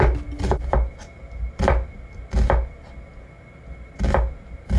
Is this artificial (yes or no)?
no